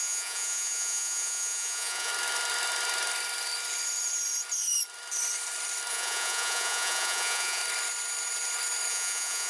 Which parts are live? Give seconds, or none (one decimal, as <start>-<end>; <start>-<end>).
2.1-5.9; 7.6-8.9